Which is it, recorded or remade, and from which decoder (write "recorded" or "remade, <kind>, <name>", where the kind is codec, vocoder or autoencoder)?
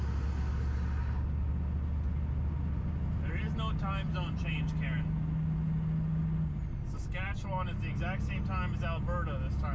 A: recorded